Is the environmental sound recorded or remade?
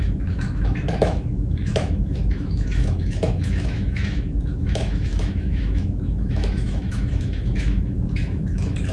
remade